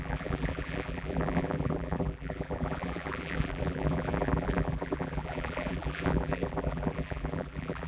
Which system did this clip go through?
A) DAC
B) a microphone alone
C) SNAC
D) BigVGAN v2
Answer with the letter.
D